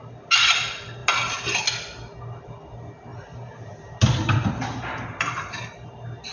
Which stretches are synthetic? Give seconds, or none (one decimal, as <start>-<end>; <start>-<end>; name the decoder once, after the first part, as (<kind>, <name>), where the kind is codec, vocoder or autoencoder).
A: 3.1-5.6 (vocoder, BigVGAN v2)